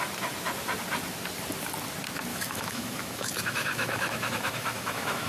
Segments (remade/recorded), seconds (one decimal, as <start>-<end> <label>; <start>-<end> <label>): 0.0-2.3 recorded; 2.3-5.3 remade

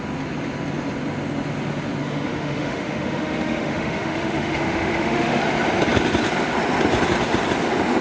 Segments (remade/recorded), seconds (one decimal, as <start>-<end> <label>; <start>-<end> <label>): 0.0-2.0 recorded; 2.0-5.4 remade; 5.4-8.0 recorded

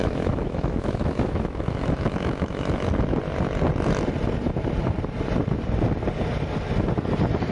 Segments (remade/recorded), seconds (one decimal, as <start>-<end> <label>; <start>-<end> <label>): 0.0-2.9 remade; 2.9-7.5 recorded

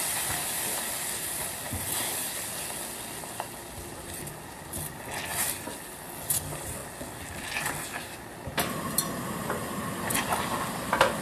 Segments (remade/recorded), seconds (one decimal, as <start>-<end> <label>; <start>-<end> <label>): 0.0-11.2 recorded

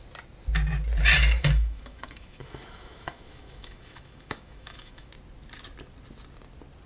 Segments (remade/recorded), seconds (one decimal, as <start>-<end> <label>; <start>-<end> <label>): 0.0-1.2 recorded; 1.2-5.1 remade; 5.1-6.9 recorded

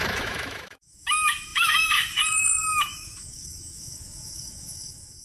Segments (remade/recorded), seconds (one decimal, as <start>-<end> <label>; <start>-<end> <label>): 0.0-5.2 remade